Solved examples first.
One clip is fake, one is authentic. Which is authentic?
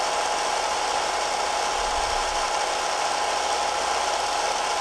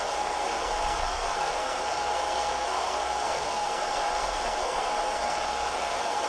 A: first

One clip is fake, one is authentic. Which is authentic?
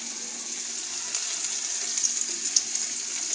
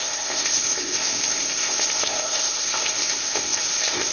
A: first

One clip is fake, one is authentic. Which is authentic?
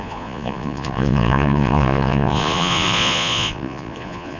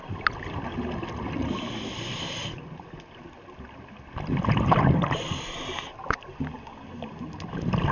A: second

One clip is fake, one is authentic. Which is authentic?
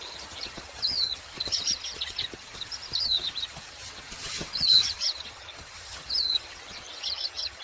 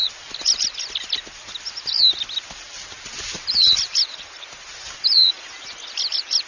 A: second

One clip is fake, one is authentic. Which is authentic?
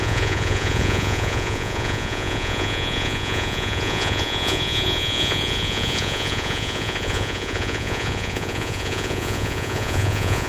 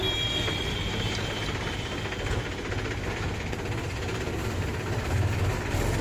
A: second